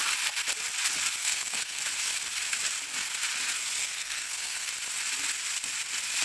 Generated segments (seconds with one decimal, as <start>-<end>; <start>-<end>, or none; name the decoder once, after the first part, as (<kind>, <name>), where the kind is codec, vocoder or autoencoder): 1.2-1.8 (codec, SNAC); 3.8-4.7